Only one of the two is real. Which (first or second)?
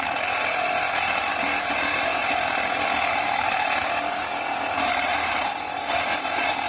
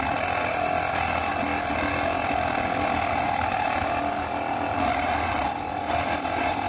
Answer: second